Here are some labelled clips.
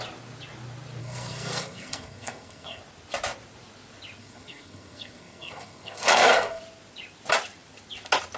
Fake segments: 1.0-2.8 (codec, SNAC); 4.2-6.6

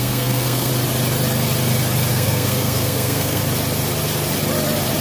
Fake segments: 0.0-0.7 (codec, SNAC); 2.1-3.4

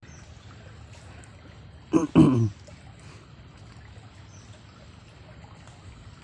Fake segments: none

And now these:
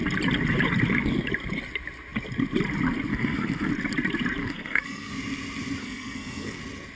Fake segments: 3.1-3.7 (codec, SNAC); 4.4-5.1; 5.8-6.6

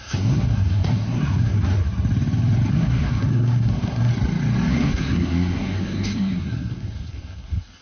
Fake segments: 0.0-1.7 (codec, SNAC); 2.7-4.1; 4.7-7.8